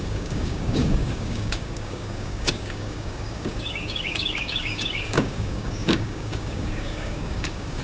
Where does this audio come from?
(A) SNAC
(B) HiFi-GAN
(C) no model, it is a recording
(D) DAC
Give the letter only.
D